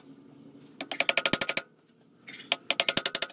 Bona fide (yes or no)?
yes